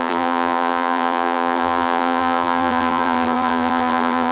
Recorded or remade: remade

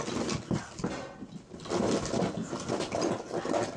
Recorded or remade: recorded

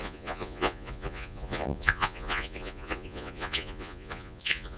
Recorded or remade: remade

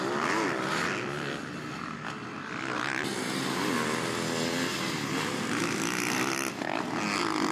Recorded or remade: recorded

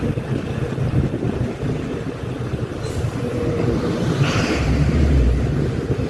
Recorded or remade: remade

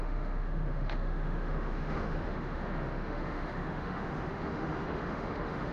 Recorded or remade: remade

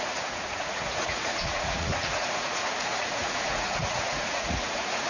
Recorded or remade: remade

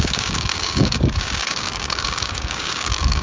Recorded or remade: remade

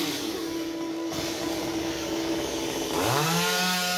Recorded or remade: remade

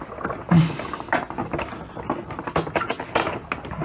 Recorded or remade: recorded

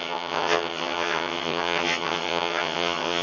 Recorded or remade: remade